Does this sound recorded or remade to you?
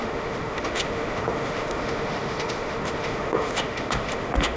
remade